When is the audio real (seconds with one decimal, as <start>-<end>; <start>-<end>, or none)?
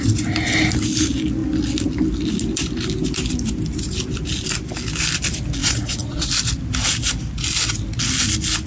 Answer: 0.0-5.6; 6.3-8.7